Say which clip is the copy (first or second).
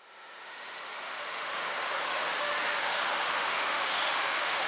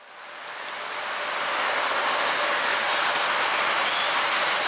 first